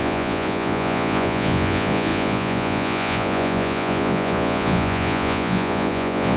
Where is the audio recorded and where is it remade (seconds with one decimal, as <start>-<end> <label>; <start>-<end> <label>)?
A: 0.0-6.4 remade